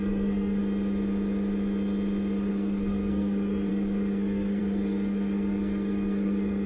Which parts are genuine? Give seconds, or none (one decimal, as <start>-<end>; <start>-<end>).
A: 0.6-2.5